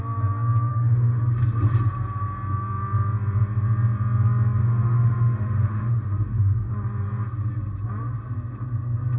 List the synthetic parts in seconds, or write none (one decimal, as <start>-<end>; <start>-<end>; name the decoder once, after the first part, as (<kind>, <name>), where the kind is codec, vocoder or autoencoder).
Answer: 0.7-1.2 (autoencoder, DAC-VAE); 4.6-6.7

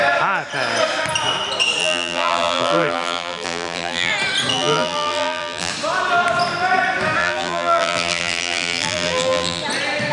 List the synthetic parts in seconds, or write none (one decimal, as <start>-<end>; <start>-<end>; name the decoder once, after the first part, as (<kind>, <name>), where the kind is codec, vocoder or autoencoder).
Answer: 1.8-4.1 (vocoder, BigVGAN v2); 4.5-5.7; 7.2-9.6

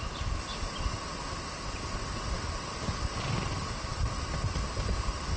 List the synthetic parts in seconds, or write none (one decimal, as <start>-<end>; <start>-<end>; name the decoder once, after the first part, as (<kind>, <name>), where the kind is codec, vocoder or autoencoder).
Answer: none

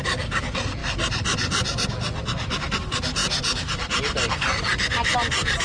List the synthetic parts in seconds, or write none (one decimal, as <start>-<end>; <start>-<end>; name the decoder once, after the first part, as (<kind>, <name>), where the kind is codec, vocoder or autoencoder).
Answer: none

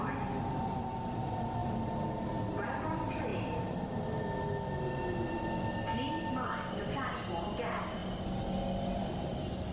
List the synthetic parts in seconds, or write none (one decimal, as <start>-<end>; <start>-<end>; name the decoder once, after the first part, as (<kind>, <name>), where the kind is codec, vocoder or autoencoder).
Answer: none

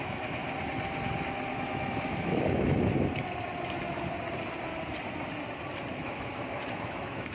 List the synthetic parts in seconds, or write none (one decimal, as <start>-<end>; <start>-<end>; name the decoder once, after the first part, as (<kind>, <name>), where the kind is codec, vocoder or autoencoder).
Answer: 0.0-0.4 (autoencoder, DAC-VAE); 1.5-2.9; 5.9-7.3